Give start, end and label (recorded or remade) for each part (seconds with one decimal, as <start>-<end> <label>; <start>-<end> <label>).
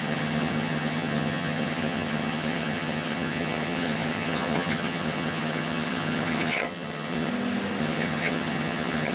0.0-7.3 remade; 7.3-7.8 recorded; 7.8-9.1 remade